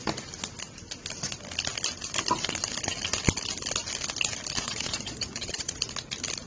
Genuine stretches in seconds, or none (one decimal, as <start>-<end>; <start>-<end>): 0.0-4.6; 5.8-6.5